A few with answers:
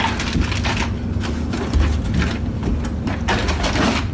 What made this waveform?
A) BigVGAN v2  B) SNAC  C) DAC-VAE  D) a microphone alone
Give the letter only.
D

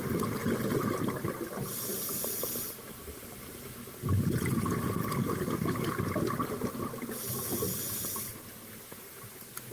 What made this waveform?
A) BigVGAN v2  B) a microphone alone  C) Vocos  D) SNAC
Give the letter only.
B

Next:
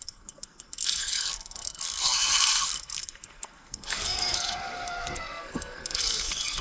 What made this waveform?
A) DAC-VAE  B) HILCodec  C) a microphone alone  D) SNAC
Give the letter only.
D